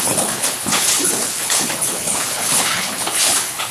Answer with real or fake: fake